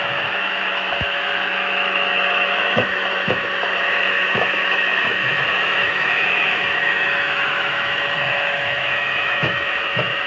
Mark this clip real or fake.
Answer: fake